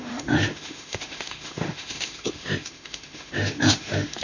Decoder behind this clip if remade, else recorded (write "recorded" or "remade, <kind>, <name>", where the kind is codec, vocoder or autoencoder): remade, autoencoder, DAC-VAE